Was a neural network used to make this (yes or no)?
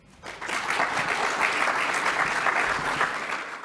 no